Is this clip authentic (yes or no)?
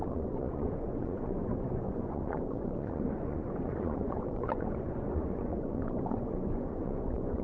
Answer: no